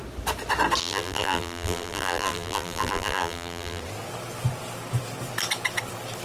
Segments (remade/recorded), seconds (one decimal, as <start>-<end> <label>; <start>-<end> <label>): 0.0-0.8 recorded; 0.8-3.8 remade; 3.8-6.2 recorded